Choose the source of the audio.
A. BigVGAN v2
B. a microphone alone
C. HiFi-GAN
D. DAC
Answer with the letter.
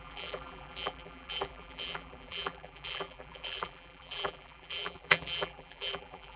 A